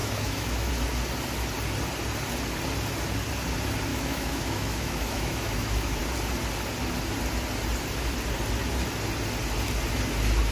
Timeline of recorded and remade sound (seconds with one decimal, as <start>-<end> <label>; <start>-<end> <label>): 0.0-0.7 remade; 0.7-3.9 recorded; 3.9-6.0 remade; 6.0-10.5 recorded